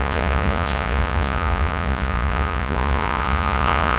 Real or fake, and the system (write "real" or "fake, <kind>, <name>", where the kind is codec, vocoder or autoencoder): fake, vocoder, Vocos